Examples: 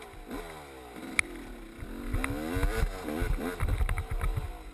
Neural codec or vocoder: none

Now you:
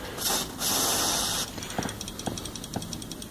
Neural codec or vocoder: none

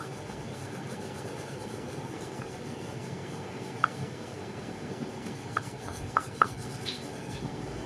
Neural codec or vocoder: codec, SNAC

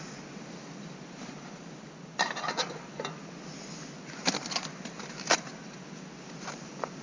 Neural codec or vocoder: none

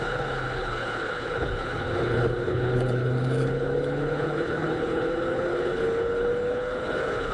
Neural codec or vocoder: codec, HILCodec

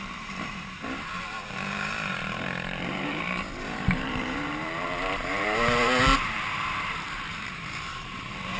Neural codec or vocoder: vocoder, BigVGAN v2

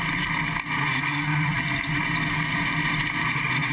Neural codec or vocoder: none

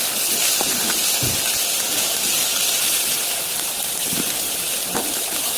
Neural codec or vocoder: none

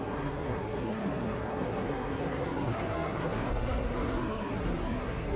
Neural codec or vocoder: codec, SNAC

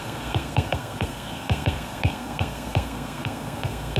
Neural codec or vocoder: codec, SNAC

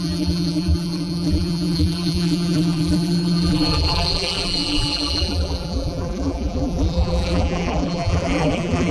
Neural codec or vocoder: vocoder, BigVGAN v2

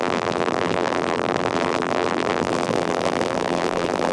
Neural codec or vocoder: vocoder, BigVGAN v2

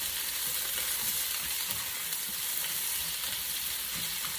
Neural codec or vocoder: none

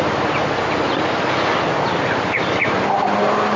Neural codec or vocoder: none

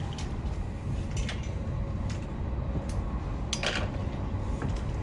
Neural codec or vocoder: none